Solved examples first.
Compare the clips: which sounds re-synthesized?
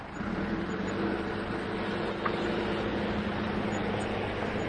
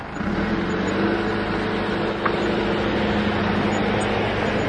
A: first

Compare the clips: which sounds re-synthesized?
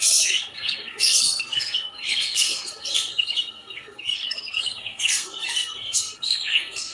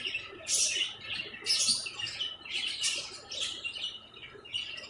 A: first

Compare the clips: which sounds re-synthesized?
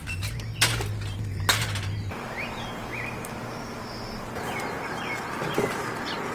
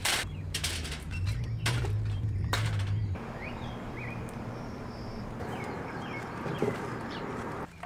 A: second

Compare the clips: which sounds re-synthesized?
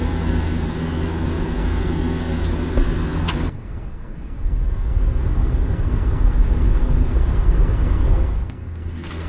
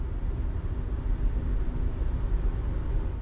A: first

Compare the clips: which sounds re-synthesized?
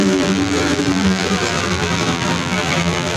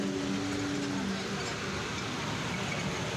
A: first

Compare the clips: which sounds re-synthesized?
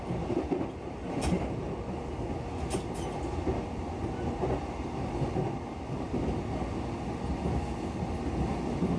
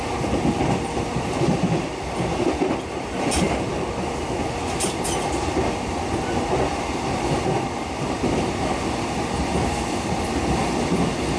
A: second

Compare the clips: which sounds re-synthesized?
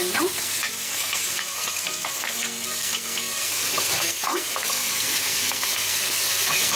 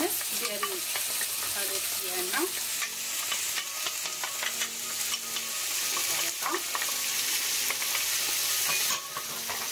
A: first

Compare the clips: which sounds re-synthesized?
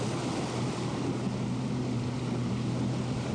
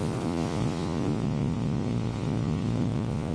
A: second